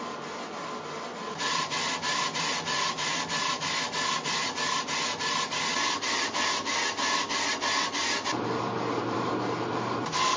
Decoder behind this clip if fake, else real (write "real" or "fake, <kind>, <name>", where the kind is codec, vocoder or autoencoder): real